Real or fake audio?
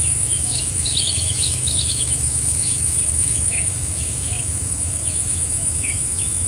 fake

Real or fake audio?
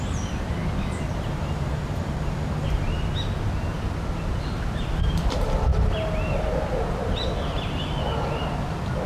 real